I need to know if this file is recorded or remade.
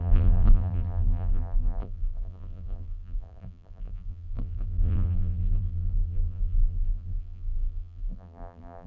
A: remade